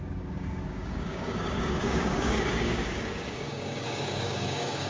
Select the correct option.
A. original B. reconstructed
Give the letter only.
B